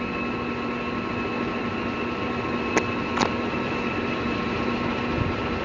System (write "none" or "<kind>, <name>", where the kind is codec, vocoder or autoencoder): none